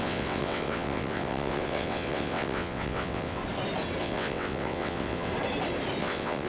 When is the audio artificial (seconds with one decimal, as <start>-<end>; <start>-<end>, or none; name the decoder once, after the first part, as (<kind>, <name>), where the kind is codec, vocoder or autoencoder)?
0.0-3.4 (vocoder, WaveNeXt); 4.0-5.3; 6.0-6.5